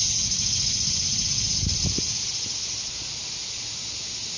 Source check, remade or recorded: recorded